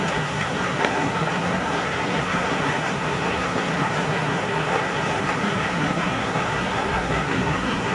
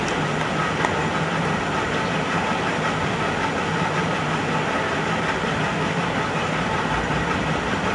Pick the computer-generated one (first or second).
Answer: first